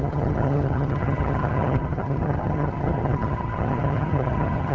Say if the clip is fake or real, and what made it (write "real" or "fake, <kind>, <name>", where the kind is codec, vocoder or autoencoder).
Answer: fake, vocoder, HiFi-GAN